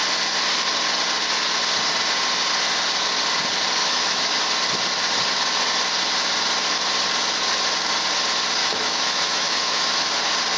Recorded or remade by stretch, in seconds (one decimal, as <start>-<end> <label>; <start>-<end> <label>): 0.0-3.8 recorded; 3.8-4.4 remade; 4.4-8.6 recorded; 8.6-10.2 remade; 10.2-10.6 recorded